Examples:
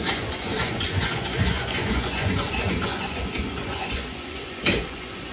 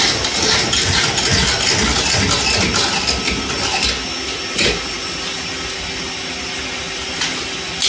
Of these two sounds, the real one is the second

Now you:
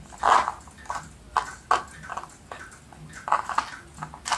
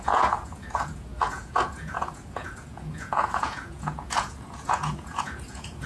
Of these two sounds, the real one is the first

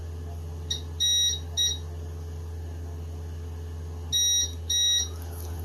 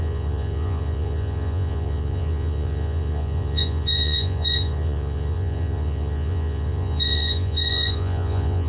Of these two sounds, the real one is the first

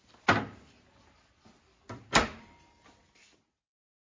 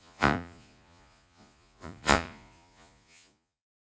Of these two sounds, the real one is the first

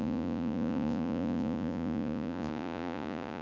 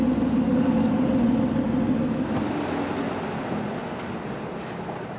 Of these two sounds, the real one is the second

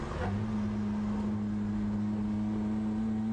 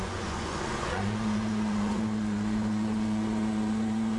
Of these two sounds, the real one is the first